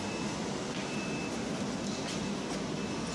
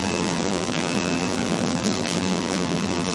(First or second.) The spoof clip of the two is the second